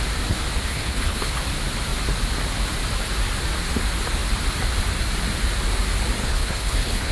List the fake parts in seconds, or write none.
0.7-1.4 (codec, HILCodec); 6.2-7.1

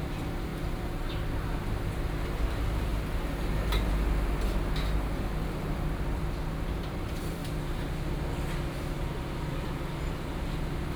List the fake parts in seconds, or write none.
0.0-0.5 (vocoder, BigVGAN v2); 1.1-2.9; 5.5-7.4; 8.7-11.0

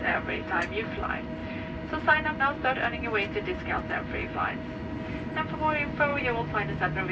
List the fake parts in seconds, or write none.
1.4-2.4 (vocoder, BigVGAN v2)

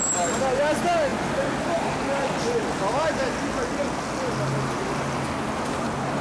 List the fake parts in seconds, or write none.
none

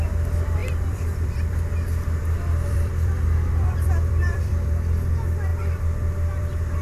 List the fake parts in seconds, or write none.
0.6-4.7 (vocoder, BigVGAN v2); 5.5-6.8

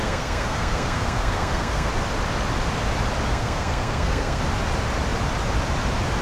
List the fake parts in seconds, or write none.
0.0-1.9 (codec, SNAC); 3.3-4.4

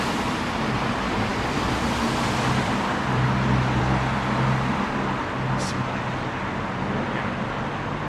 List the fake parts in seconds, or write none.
1.3-3.8 (vocoder, BigVGAN v2)

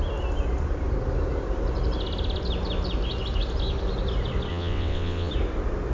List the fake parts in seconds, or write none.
4.5-5.3 (vocoder, WaveNeXt)